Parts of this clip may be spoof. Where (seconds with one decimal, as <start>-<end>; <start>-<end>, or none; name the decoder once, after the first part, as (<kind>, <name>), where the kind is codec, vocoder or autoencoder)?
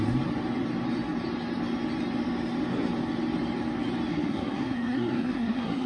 4.1-5.9 (codec, SNAC)